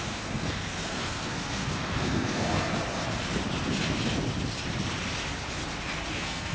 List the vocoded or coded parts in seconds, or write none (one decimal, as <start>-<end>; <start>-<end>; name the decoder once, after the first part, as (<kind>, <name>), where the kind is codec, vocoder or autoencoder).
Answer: 0.0-2.7 (codec, SNAC); 6.1-6.5